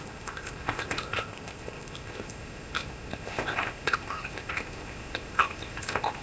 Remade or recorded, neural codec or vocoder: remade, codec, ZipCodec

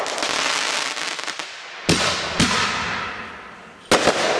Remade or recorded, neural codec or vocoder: recorded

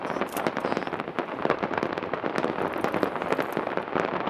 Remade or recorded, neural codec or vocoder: recorded